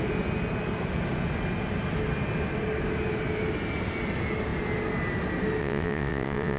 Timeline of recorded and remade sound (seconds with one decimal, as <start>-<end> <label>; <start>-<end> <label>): 0.0-5.6 recorded; 5.6-6.6 remade